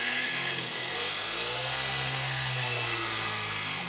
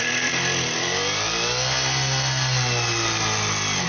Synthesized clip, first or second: first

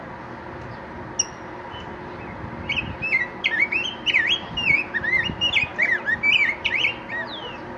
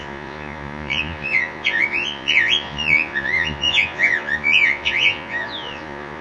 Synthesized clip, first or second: second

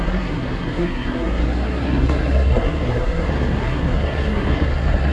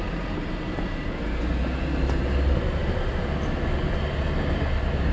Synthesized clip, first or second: first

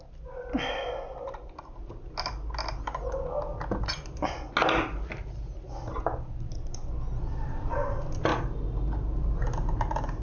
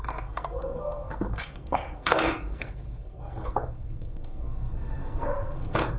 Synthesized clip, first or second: second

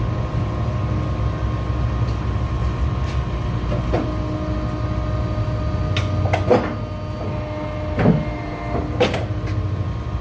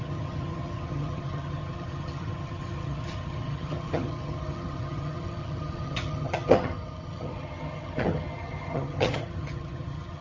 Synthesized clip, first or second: second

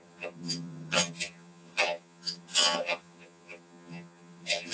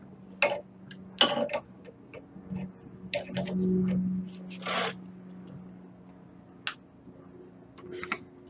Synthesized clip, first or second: first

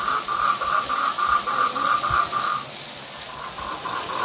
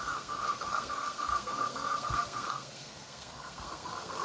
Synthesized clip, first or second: second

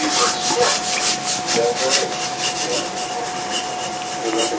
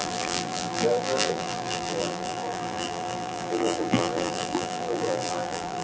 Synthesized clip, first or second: second